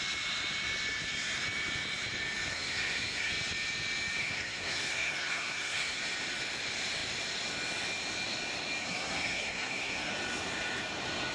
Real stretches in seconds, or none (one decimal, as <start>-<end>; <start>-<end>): 0.0-2.5; 3.3-4.2; 6.0-8.8; 10.1-11.3